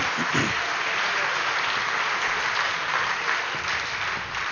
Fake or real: real